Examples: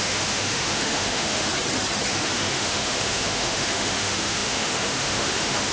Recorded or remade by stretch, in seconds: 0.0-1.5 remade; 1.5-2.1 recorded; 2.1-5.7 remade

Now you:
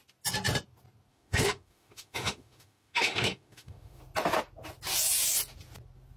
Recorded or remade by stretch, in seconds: 0.0-1.1 recorded; 1.1-4.0 remade; 4.0-6.2 recorded

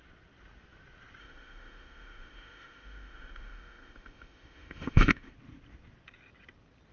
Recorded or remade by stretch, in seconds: 0.0-1.2 recorded; 1.2-5.3 remade; 5.3-6.9 recorded